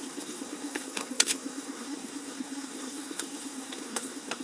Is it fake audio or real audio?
fake